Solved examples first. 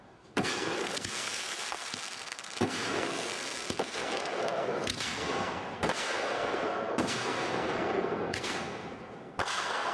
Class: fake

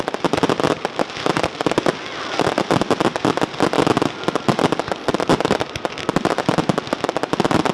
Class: real